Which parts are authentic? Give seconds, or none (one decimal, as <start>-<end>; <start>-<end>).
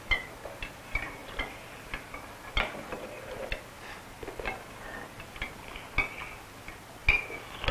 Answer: 0.0-7.7